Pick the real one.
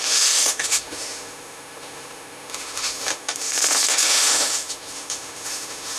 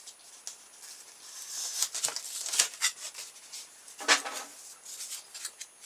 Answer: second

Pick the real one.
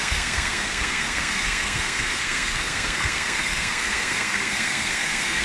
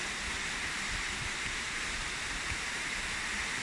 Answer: second